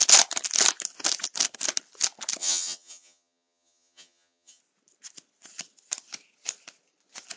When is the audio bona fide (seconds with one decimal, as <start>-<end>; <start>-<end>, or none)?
0.0-2.4; 4.6-7.4